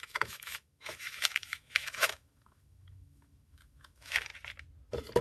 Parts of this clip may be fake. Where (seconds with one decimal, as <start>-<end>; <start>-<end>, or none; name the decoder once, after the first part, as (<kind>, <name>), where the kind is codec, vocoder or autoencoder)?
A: 0.0-4.3 (autoencoder, DAC-VAE)